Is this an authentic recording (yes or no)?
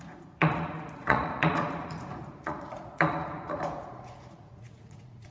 no